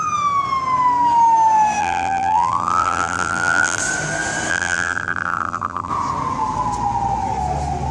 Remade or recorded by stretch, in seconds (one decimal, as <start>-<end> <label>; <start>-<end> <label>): 0.0-1.8 recorded; 1.8-3.8 remade; 3.8-4.5 recorded; 4.5-5.9 remade; 5.9-7.9 recorded